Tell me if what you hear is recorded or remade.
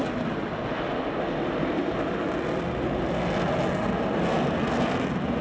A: recorded